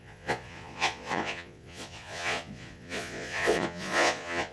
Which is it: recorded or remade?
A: remade